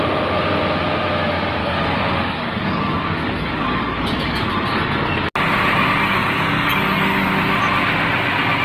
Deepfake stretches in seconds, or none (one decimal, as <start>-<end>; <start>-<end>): 1.6-4.8; 6.0-7.3